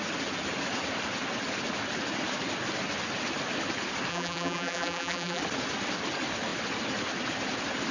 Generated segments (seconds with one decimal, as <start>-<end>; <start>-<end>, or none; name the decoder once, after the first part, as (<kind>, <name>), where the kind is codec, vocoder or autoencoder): 4.1-5.4 (vocoder, BigVGAN v2)